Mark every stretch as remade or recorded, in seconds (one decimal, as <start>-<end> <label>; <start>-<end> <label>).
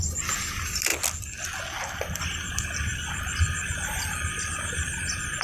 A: 0.0-5.4 recorded